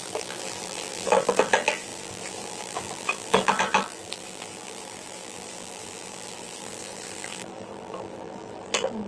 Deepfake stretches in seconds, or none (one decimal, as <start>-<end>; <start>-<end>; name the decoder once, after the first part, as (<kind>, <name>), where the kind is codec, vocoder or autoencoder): 0.0-9.1 (vocoder, BigVGAN v2)